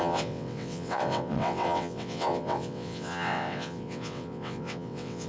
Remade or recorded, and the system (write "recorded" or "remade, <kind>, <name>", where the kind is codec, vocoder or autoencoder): remade, vocoder, WaveNeXt